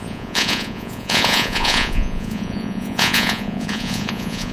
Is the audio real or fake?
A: fake